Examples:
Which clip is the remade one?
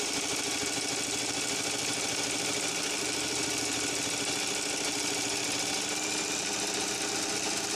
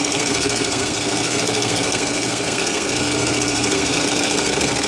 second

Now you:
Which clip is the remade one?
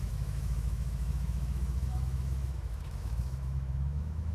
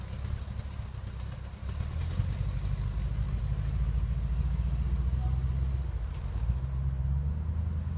first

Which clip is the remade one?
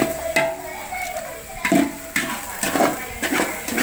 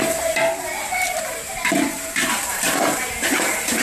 second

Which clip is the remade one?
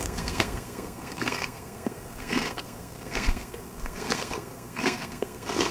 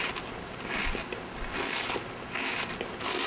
first